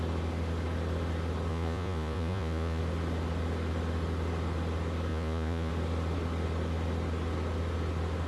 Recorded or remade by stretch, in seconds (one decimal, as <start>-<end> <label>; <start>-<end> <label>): 0.0-1.5 recorded; 1.5-2.8 remade; 2.8-5.1 recorded; 5.1-5.7 remade; 5.7-8.3 recorded